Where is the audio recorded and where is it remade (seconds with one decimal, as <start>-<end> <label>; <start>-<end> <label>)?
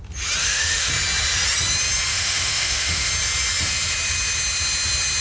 0.0-0.4 recorded; 0.4-0.9 remade; 0.9-2.1 recorded; 2.1-3.1 remade; 3.1-5.2 recorded